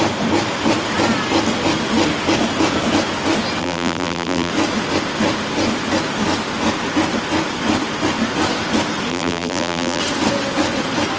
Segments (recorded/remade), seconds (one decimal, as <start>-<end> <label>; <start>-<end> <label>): 0.0-3.6 recorded; 3.6-4.5 remade; 4.5-9.1 recorded; 9.1-10.0 remade; 10.0-11.2 recorded